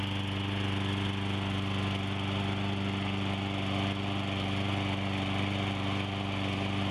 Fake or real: real